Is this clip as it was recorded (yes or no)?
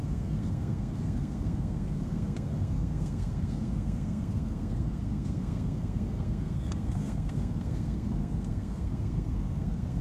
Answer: no